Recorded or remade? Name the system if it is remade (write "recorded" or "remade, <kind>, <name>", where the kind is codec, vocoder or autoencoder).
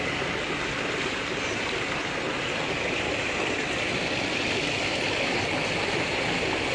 recorded